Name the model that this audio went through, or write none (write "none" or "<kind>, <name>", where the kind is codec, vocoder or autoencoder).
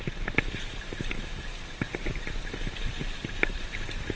none